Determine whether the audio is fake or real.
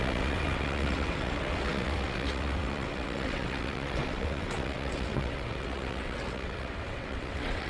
fake